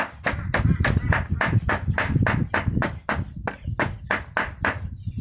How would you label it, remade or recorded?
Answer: recorded